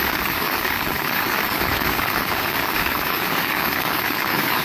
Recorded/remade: remade